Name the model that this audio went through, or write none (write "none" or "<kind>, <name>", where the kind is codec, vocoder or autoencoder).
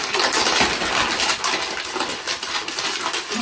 none